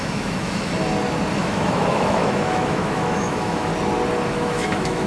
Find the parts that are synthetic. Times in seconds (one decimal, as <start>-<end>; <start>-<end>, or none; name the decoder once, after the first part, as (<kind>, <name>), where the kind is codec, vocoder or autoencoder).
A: 0.0-0.7 (autoencoder, DAC-VAE); 1.4-3.7; 4.3-5.1